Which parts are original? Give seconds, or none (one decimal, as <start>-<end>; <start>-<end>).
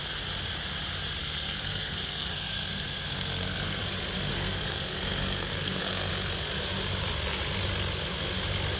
0.0-1.2; 3.8-4.3; 6.1-8.8